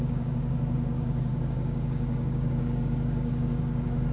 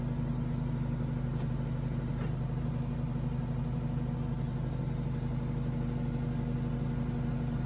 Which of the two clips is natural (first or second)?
second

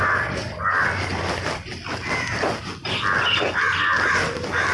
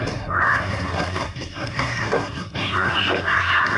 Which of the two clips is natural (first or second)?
first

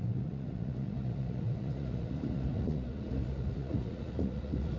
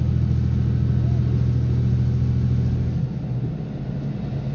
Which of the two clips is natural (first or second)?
second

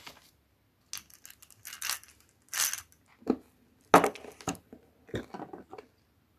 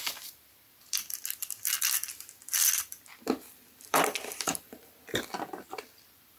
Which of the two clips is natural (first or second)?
first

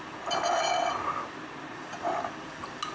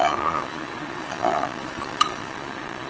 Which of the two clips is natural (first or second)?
first